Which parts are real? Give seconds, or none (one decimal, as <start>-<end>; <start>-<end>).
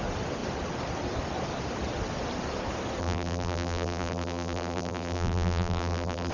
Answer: 0.0-3.0